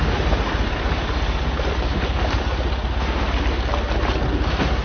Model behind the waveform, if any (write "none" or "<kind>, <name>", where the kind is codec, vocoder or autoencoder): none